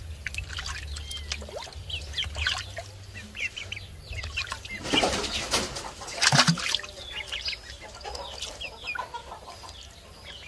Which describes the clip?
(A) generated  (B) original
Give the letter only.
B